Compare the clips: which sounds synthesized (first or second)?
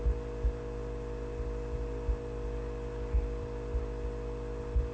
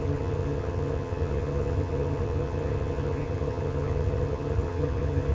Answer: second